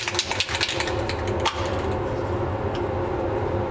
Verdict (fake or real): real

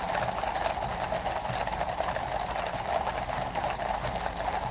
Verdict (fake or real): real